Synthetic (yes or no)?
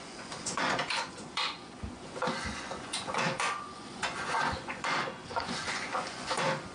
yes